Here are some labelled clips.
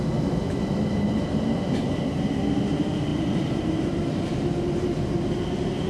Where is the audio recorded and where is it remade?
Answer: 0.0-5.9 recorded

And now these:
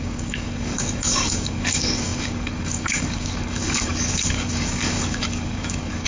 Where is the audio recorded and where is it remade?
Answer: 0.0-6.1 remade

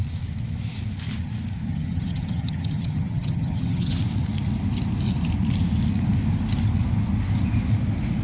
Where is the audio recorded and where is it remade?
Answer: 0.0-1.7 recorded; 1.7-4.0 remade; 4.0-8.2 recorded